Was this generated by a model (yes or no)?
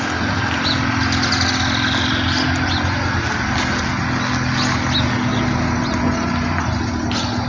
no